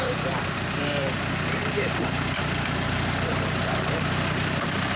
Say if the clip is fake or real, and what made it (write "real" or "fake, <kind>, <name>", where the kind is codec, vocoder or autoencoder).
fake, vocoder, BigVGAN v2